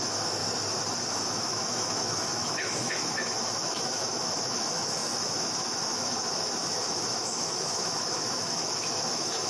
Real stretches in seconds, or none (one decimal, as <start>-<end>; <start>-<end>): 0.4-1.1